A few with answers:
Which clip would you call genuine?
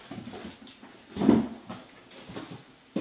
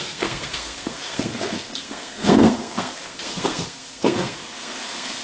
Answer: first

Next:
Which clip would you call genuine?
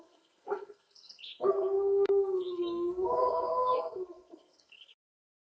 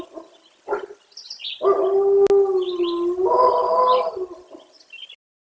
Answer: second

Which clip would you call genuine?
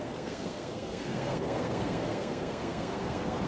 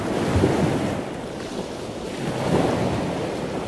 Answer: second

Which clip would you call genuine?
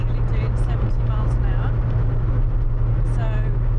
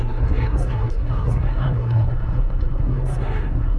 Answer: first